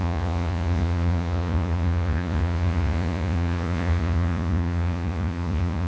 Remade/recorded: remade